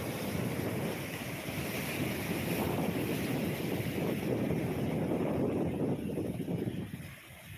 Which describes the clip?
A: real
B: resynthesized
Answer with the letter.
A